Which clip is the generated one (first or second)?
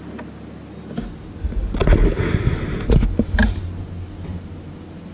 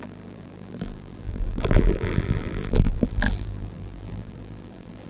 second